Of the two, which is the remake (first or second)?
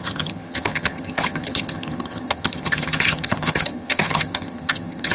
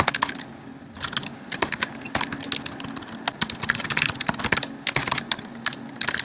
first